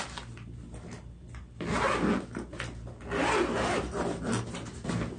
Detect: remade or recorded recorded